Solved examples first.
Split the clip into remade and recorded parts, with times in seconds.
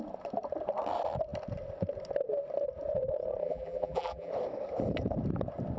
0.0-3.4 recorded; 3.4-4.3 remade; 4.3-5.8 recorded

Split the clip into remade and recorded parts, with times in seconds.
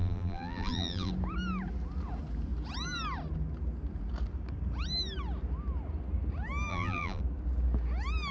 0.0-1.1 remade; 1.1-6.7 recorded; 6.7-7.2 remade; 7.2-8.3 recorded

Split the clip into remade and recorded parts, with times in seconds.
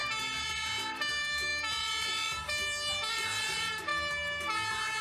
0.0-1.1 recorded; 1.1-3.9 remade; 3.9-5.0 recorded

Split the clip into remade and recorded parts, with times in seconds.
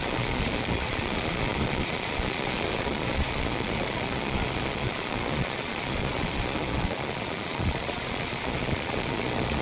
0.0-9.6 remade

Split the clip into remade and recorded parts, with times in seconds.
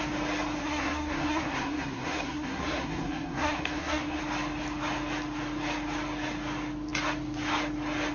0.0-0.6 recorded; 0.6-4.2 remade; 4.2-8.1 recorded